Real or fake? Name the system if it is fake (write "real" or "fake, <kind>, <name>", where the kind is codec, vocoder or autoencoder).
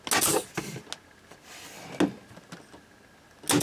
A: real